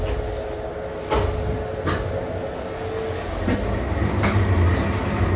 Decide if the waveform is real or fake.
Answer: real